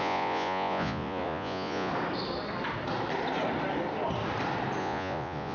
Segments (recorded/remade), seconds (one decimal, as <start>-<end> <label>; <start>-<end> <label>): 0.0-1.9 remade; 1.9-4.8 recorded; 4.8-5.5 remade